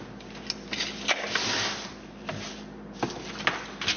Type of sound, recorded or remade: recorded